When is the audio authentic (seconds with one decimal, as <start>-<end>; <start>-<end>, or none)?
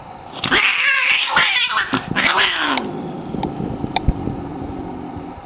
4.5-5.5